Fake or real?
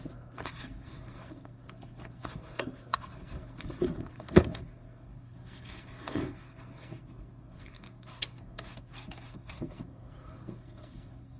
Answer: fake